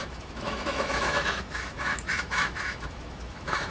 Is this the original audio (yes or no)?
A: no